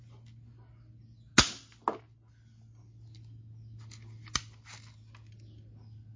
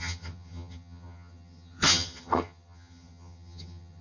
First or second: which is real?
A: first